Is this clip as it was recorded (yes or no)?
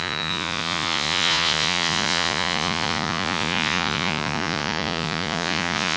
no